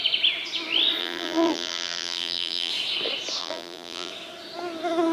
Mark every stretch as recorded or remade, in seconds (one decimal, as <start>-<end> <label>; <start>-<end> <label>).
0.0-1.0 recorded; 1.0-2.7 remade; 2.7-3.4 recorded; 3.4-4.1 remade; 4.1-5.1 recorded